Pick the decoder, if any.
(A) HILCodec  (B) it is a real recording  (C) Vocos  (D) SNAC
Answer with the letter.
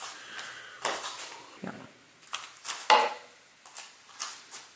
B